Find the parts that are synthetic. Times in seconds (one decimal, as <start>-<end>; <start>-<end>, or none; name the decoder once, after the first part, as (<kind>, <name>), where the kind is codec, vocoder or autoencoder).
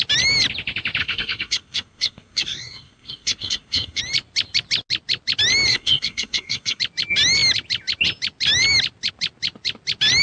1.0-4.0 (codec, SNAC); 5.7-6.8